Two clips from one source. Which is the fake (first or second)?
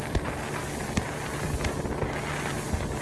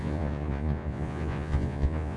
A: second